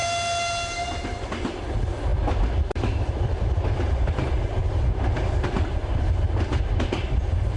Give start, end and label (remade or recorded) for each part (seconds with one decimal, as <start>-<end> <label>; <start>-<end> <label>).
0.0-7.6 recorded